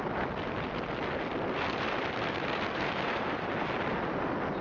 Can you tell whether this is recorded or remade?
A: recorded